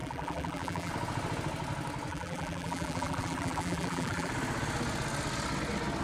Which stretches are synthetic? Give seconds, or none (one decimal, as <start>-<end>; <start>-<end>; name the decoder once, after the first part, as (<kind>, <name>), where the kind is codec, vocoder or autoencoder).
0.0-0.9 (vocoder, BigVGAN v2); 2.1-4.3